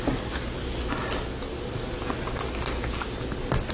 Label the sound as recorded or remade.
recorded